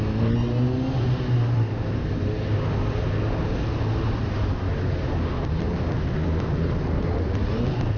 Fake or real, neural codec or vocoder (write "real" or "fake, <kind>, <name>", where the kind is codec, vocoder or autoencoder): real